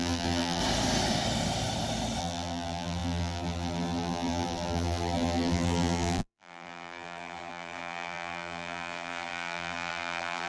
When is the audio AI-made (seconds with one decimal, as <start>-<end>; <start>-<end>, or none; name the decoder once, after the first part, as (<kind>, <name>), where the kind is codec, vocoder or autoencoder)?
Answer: 0.0-0.6 (vocoder, BigVGAN v2); 2.2-10.5